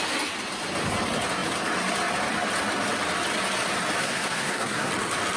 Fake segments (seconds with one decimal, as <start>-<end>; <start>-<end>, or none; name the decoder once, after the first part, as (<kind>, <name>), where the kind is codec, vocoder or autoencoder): 4.0-4.9 (codec, SNAC)